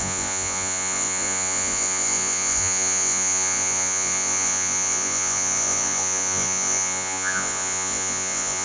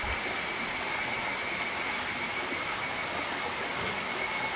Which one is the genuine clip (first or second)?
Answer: second